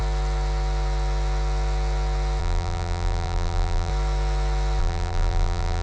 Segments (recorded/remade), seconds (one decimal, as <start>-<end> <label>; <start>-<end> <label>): 0.0-2.4 recorded; 2.4-3.9 remade; 3.9-4.8 recorded; 4.8-5.8 remade